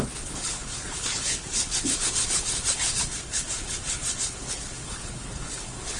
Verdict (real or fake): fake